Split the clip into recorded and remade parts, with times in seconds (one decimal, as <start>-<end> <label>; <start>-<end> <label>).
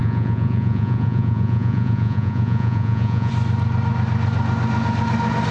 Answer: 0.0-3.3 remade; 3.3-5.5 recorded